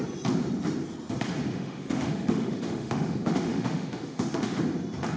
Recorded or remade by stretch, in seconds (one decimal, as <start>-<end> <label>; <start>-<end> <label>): 0.0-1.5 recorded; 1.5-4.6 remade; 4.6-5.2 recorded

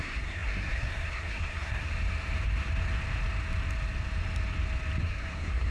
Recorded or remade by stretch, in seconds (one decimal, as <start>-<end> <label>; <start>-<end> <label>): 0.0-1.9 remade; 1.9-5.0 recorded; 5.0-5.7 remade

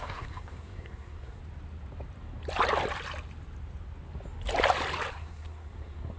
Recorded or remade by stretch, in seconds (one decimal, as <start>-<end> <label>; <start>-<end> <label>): 0.0-1.4 remade; 1.4-5.1 recorded; 5.1-6.2 remade

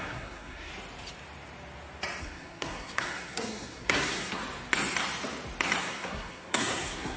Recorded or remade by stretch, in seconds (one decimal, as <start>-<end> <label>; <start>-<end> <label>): 0.0-0.7 remade; 0.7-2.2 recorded; 2.2-4.4 remade; 4.4-5.8 recorded; 5.8-7.2 remade